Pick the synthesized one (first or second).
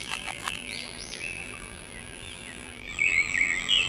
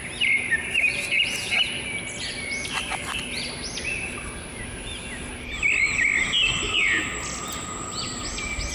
first